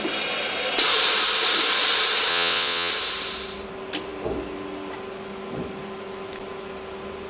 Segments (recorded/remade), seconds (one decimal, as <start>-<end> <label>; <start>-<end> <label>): 0.0-2.3 recorded; 2.3-2.9 remade; 2.9-7.3 recorded